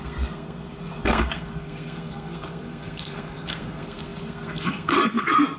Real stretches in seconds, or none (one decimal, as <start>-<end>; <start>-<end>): none

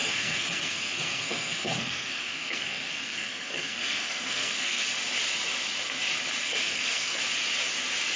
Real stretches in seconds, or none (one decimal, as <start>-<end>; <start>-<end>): 4.9-6.4; 7.2-8.2

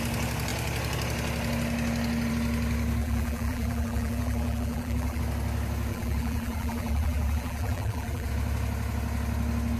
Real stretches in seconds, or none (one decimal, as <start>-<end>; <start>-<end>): 0.0-3.0; 5.2-5.9; 8.3-9.8

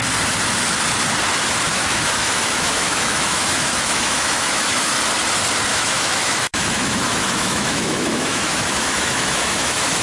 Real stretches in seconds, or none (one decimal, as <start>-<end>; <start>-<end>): 0.0-1.7; 4.9-5.7

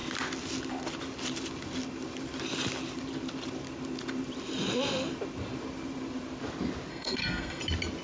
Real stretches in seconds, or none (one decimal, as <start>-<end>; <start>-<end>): 0.0-6.9; 7.6-8.0

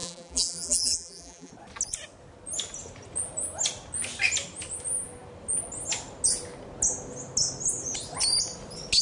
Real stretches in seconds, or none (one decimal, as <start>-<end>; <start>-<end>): 1.5-9.0

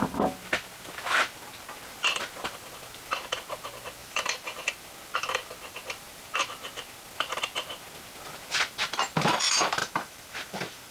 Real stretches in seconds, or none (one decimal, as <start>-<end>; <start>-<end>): 0.0-4.0; 4.7-9.8